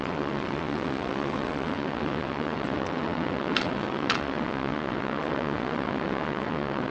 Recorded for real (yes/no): no